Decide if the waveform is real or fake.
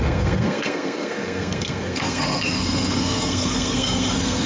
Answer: fake